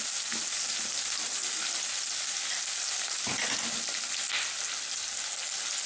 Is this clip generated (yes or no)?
no